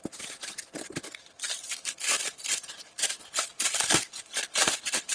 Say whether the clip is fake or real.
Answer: real